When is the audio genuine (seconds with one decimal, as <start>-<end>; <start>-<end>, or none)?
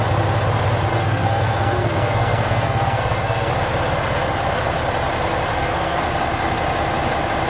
0.0-0.9; 3.5-5.5; 6.0-7.5